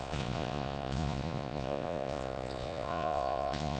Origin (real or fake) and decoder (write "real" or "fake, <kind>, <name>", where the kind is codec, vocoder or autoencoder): fake, vocoder, Vocos